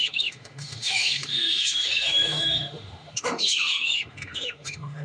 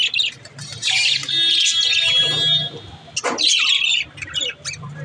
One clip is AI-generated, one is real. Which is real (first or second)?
second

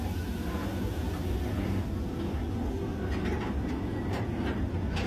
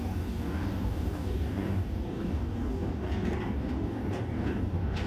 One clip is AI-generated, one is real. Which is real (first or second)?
first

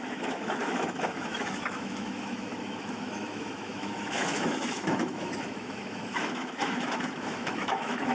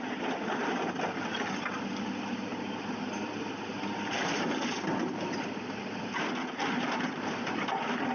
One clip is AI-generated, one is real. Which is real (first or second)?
second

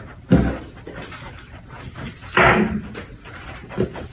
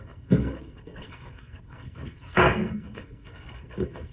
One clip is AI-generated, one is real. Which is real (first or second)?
first